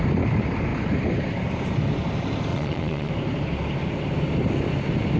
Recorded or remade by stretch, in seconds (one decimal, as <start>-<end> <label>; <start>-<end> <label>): 0.0-2.5 recorded; 2.5-3.1 remade; 3.1-5.2 recorded